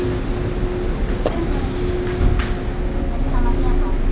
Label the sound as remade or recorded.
recorded